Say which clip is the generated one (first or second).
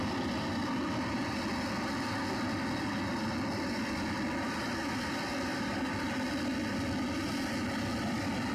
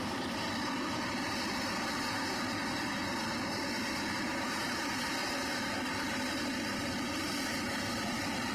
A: second